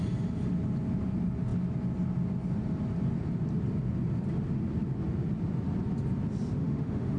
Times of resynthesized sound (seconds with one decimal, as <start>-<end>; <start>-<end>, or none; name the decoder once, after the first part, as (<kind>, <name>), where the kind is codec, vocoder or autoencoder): 6.6-7.2 (autoencoder, DAC-VAE)